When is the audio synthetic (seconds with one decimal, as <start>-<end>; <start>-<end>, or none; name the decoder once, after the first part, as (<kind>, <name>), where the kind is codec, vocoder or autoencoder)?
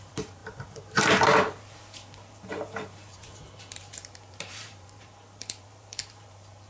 0.0-6.7 (vocoder, BigVGAN v2)